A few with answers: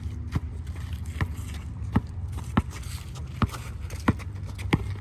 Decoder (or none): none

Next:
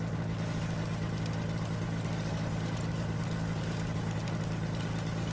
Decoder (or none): none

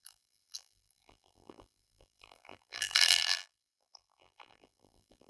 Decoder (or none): vocoder, BigVGAN v2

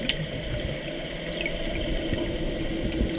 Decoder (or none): none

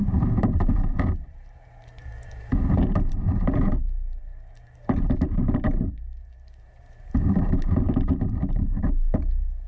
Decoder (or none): vocoder, BigVGAN v2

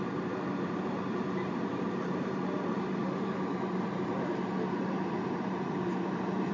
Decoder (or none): vocoder, BigVGAN v2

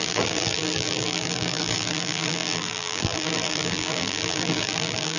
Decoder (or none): vocoder, BigVGAN v2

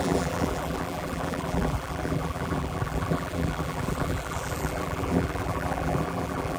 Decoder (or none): vocoder, BigVGAN v2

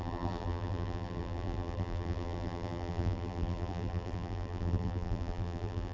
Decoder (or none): vocoder, BigVGAN v2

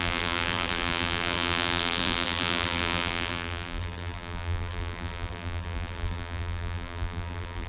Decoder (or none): vocoder, BigVGAN v2